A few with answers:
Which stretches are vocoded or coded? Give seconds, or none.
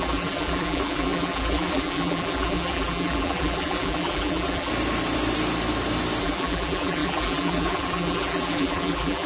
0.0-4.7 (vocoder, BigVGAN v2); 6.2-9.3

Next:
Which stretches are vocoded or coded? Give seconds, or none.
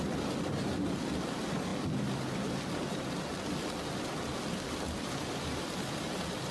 none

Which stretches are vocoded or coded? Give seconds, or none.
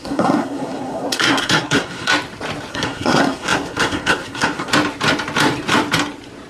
0.0-2.1 (codec, SNAC); 2.7-4.7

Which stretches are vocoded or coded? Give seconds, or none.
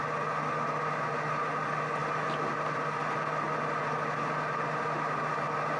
none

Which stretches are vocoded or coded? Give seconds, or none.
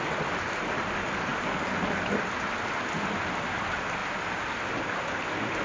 none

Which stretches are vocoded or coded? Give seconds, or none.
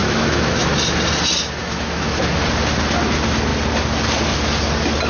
0.0-0.6 (autoencoder, DAC-VAE); 1.6-2.2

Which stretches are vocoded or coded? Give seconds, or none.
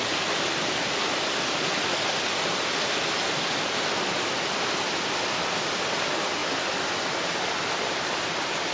none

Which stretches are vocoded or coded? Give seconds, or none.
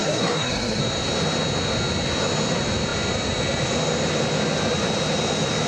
0.0-0.8 (codec, SNAC)